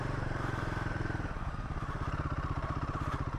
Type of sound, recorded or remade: remade